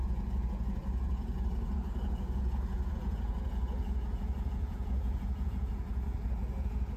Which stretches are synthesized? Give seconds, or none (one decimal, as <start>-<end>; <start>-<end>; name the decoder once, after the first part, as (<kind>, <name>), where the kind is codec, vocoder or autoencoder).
0.0-7.0 (vocoder, Vocos)